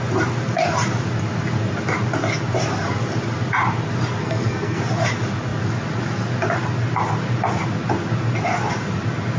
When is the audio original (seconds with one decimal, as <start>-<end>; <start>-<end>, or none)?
0.0-4.2; 4.8-9.4